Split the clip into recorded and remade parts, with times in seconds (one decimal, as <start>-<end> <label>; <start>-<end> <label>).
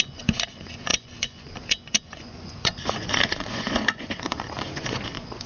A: 0.0-5.5 remade